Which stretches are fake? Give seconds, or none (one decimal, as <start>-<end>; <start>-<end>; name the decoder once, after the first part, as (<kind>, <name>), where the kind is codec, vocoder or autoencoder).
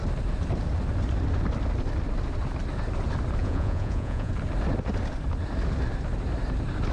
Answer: 3.4-4.3 (vocoder, Vocos)